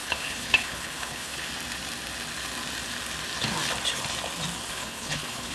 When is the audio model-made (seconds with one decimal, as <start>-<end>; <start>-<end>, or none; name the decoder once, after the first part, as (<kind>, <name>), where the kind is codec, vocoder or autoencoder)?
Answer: 0.0-1.5 (codec, HILCodec); 4.7-5.5

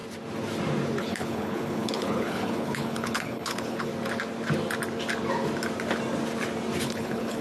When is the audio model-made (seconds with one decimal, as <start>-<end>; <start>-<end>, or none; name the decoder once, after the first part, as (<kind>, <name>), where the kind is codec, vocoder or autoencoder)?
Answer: 1.0-3.9 (codec, HILCodec); 6.8-7.4

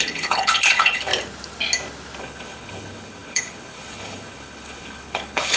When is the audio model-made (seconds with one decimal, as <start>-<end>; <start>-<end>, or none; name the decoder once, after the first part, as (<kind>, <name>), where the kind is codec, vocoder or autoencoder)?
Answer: 0.0-1.1 (codec, HILCodec); 2.2-5.6

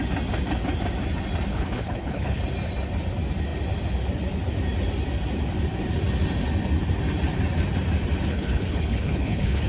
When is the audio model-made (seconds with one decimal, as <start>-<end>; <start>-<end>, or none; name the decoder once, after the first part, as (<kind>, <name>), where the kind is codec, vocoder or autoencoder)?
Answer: 1.5-2.4 (codec, HILCodec); 8.3-9.7